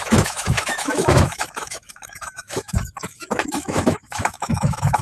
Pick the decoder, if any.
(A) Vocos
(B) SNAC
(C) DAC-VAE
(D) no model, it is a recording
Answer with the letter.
C